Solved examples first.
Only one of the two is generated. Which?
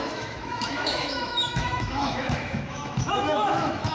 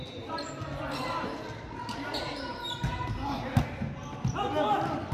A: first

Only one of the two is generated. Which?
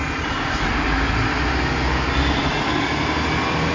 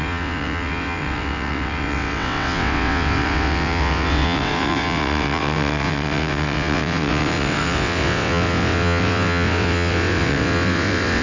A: second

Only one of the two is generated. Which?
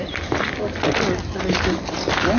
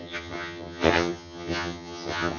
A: second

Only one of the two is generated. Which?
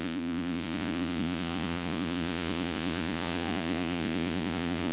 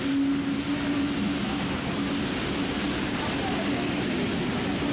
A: first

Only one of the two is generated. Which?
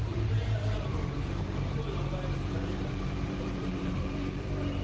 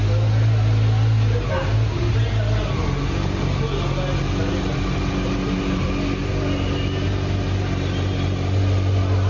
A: first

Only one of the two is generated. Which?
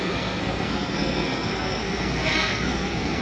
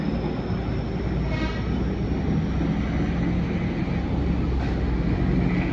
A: first